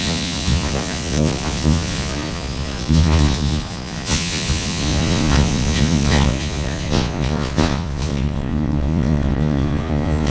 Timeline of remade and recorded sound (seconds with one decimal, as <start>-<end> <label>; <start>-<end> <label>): 0.0-10.3 remade